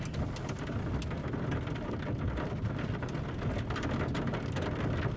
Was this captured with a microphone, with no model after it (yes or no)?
yes